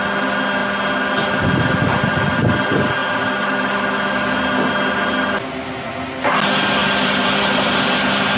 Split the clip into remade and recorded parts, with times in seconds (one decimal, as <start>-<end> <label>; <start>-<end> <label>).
0.0-3.0 recorded; 3.0-3.8 remade; 3.8-6.8 recorded; 6.8-8.4 remade